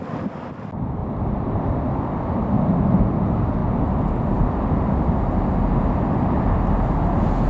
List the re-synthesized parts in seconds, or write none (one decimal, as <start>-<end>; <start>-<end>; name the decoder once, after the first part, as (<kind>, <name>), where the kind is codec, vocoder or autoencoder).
1.0-2.0 (vocoder, BigVGAN v2)